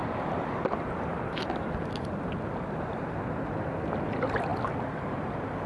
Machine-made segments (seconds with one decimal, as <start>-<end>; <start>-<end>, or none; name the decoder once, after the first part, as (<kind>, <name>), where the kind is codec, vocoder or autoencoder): none